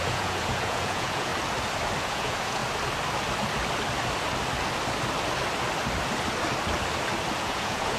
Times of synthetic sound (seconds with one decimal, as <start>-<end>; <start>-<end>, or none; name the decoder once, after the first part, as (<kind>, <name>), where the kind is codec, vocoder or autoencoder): 0.0-1.3 (vocoder, Vocos); 2.0-2.6; 7.4-8.0